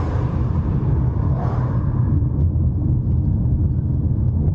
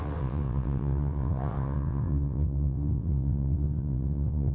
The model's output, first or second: second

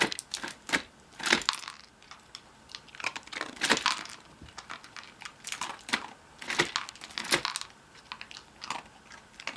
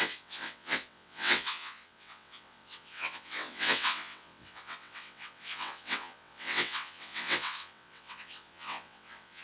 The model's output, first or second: second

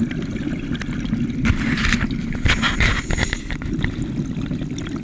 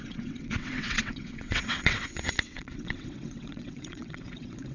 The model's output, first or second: second